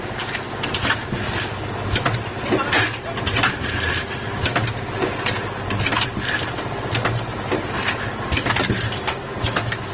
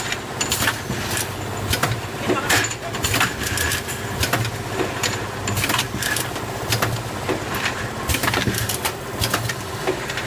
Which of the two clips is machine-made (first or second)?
second